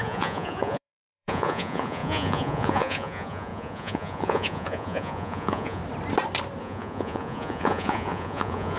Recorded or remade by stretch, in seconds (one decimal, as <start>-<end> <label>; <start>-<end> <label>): 0.0-5.8 remade; 5.8-6.6 recorded; 6.6-8.8 remade